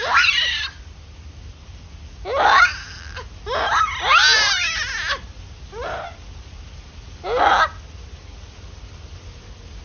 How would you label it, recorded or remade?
recorded